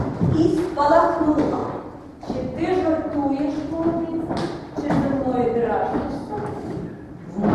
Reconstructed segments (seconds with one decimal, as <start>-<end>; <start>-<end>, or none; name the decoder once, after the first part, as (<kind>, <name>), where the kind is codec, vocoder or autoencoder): 5.9-7.1 (codec, DAC)